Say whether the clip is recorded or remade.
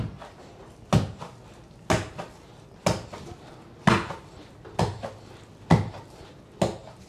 recorded